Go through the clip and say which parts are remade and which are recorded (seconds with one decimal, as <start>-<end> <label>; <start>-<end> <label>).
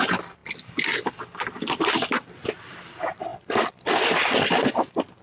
0.0-5.2 recorded